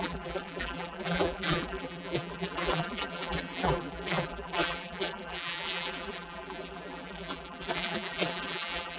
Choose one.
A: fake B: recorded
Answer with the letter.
A